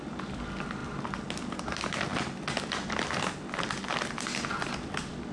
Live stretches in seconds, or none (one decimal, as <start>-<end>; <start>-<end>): 0.0-5.3